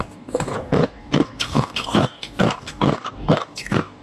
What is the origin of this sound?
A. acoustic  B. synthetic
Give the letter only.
B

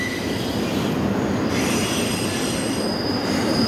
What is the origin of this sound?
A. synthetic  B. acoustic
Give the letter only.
B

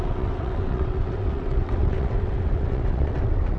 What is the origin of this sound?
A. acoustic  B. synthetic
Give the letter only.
B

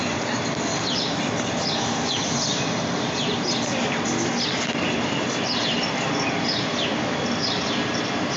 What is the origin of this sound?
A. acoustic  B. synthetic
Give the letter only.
B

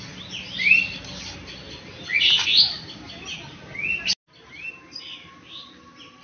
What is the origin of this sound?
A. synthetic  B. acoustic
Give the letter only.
B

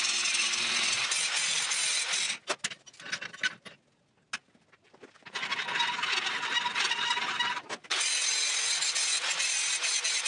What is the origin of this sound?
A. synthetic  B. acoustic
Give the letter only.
B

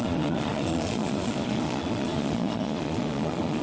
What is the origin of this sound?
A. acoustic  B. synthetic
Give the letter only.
B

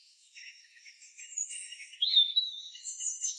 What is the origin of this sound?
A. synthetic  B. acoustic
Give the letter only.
A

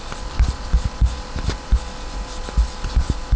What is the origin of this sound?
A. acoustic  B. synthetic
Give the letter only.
A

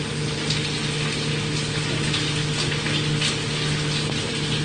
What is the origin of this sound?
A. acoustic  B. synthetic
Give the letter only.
A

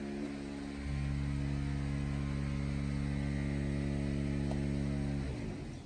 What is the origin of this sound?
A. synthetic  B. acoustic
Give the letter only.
B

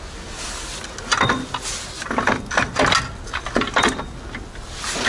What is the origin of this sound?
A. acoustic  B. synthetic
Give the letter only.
A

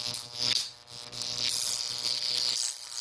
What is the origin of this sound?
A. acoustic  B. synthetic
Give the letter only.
A